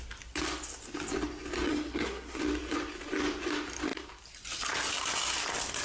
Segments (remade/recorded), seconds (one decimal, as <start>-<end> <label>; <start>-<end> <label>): 0.0-1.7 recorded; 1.7-2.4 remade; 2.4-5.8 recorded